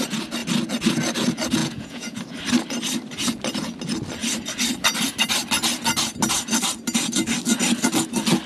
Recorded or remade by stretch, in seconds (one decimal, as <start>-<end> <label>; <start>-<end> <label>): 0.0-1.6 recorded; 1.6-2.2 remade; 2.2-8.5 recorded